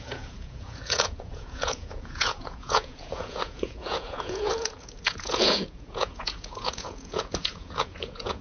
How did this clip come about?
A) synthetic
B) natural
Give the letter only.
A